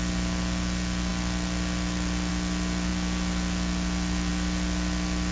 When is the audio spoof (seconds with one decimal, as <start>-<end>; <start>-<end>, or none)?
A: none